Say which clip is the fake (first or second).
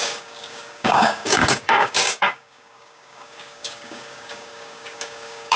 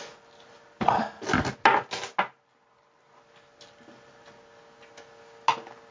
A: first